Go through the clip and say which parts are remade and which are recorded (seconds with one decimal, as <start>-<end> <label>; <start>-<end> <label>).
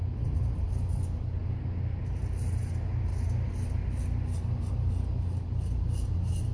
0.0-1.0 remade; 1.0-3.1 recorded; 3.1-4.7 remade; 4.7-6.5 recorded